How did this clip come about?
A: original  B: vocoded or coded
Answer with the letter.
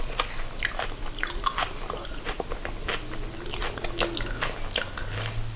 A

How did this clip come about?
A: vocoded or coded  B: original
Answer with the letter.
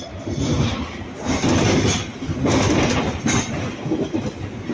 B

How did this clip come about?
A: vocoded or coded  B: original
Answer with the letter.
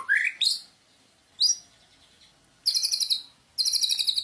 B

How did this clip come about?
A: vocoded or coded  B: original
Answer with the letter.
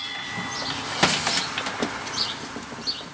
B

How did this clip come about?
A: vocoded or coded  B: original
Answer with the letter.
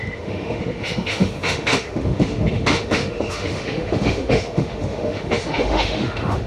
A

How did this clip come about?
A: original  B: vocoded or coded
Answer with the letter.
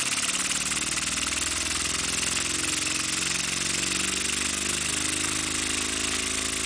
A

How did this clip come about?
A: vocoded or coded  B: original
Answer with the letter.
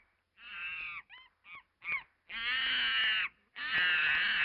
B